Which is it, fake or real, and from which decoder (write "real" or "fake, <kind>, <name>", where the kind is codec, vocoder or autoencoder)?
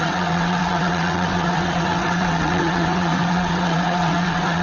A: fake, vocoder, WaveNeXt